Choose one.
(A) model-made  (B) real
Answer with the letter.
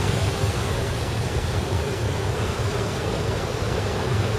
A